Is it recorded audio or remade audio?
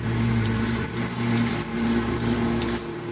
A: remade